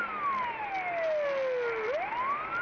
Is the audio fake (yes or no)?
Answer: no